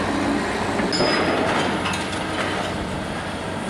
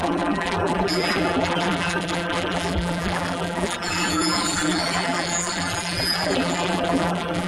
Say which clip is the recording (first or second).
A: first